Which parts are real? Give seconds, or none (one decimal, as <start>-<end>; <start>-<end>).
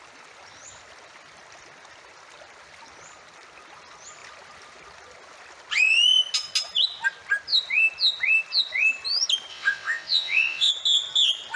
0.0-9.5; 10.7-11.6